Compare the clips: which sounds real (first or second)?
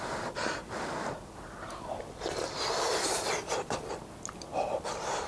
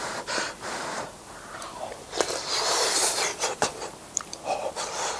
first